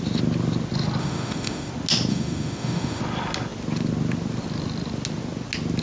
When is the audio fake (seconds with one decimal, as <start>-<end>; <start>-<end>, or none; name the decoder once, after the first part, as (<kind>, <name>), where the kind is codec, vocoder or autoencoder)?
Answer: 1.0-1.7 (autoencoder, DAC-VAE); 2.1-3.0